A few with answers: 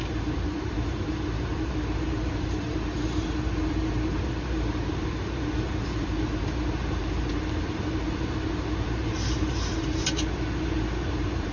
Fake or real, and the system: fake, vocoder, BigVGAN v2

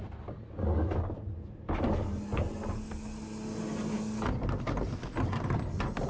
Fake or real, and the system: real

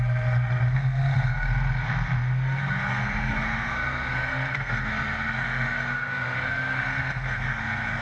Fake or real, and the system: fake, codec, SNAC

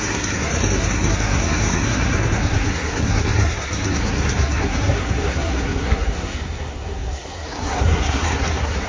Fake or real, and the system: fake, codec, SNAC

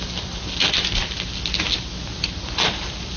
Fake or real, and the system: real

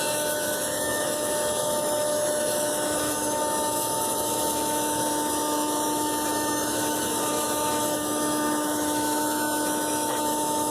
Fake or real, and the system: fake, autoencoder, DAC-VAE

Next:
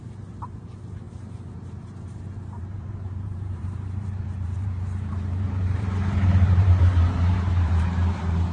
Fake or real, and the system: fake, vocoder, BigVGAN v2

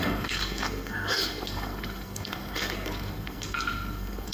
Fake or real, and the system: fake, codec, SNAC